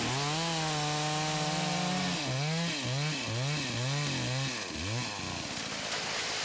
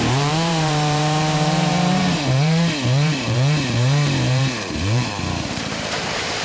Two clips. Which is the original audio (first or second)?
first